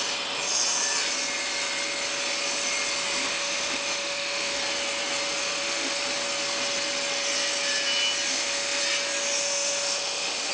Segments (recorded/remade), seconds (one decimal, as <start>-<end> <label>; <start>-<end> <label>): 0.0-3.2 recorded; 3.2-4.6 remade; 4.6-5.4 recorded; 5.4-6.0 remade; 6.0-8.3 recorded; 8.3-8.8 remade; 8.8-9.4 recorded; 9.4-10.5 remade